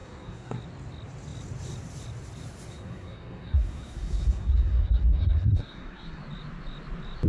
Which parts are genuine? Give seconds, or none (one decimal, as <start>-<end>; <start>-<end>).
0.6-2.7; 6.2-7.3